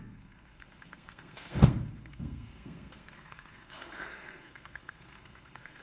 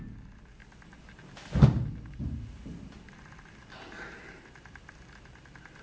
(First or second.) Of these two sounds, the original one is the second